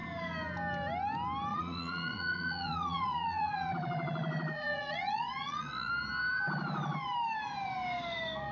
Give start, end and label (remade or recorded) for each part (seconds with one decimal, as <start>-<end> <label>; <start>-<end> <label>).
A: 0.0-1.5 recorded; 1.5-5.9 remade; 5.9-8.5 recorded